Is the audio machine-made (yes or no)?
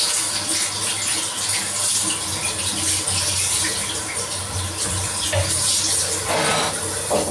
no